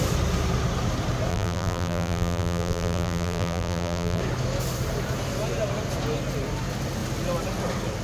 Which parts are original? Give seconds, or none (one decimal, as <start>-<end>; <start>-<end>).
0.0-1.3; 4.2-8.0